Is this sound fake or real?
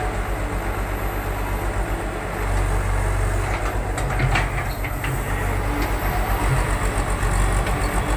real